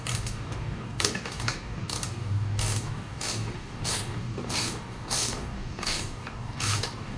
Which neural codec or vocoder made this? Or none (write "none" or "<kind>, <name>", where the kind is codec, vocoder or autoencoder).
codec, DAC